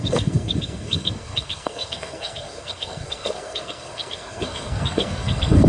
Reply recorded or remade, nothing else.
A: remade